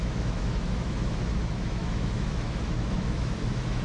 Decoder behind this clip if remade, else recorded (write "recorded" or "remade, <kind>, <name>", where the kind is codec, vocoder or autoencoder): remade, autoencoder, DAC-VAE